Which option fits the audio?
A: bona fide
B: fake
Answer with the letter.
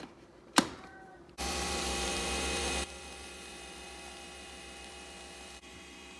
B